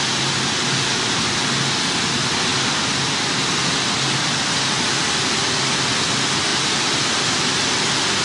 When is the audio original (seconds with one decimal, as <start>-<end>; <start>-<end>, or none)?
0.0-8.2